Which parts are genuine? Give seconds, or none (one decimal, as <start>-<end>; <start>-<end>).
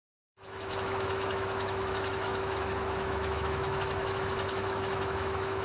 none